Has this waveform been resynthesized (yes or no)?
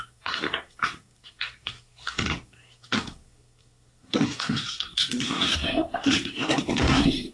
yes